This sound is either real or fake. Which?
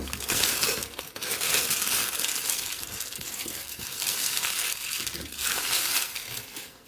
fake